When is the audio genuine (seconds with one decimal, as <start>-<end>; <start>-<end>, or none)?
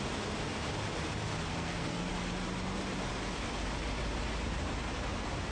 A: 0.0-1.5; 2.1-5.5